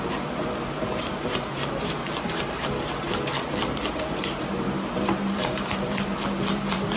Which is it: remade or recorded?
remade